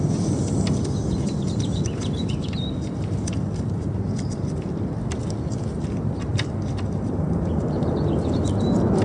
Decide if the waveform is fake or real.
real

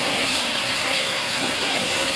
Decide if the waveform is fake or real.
fake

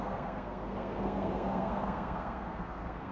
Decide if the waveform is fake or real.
fake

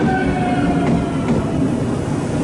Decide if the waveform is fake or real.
real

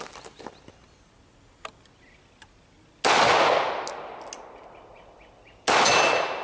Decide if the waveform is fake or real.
real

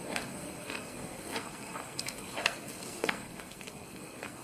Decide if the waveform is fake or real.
fake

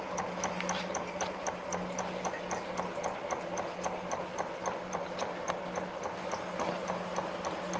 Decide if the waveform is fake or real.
real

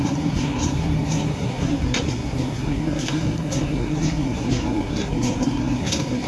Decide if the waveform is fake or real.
fake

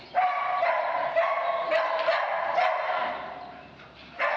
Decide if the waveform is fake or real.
real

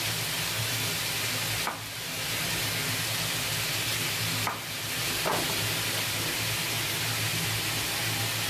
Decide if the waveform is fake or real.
real